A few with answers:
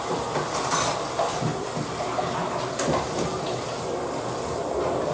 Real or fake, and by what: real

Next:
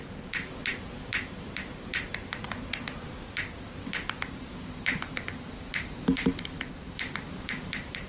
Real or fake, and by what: real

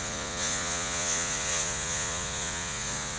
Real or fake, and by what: fake, vocoder, Vocos